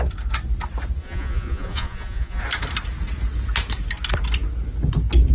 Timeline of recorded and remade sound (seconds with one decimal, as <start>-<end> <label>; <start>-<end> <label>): 0.0-1.0 recorded; 1.0-2.4 remade; 2.4-5.3 recorded